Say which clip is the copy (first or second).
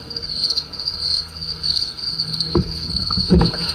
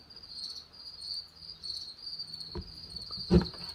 first